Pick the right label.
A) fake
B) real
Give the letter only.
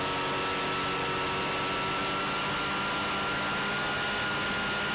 B